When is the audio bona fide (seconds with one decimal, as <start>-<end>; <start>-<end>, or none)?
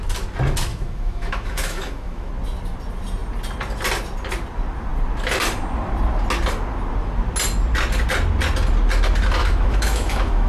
0.0-0.7; 2.3-9.4